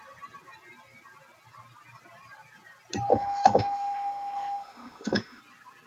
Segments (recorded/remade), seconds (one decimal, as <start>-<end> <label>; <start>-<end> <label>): 0.0-3.1 recorded; 3.1-5.4 remade; 5.4-5.9 recorded